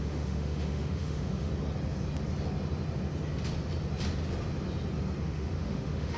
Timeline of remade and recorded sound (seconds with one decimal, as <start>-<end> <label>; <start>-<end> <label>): 0.0-1.5 remade; 1.5-5.2 recorded; 5.2-6.2 remade